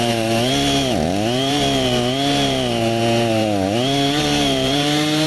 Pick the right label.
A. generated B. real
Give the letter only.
A